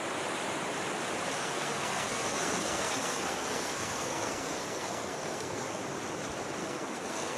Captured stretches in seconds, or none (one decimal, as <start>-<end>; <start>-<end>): 0.0-1.4; 5.8-6.6

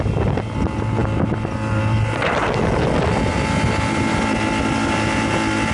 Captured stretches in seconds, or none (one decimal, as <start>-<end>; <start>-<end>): 0.0-5.7

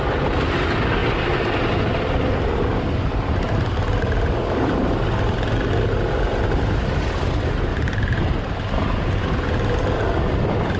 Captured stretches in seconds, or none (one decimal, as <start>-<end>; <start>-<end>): 0.0-10.8